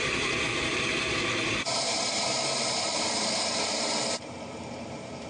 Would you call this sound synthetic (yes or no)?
yes